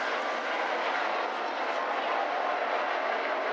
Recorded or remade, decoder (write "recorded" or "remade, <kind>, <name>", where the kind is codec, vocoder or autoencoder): recorded